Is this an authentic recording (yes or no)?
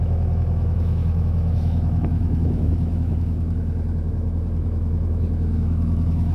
no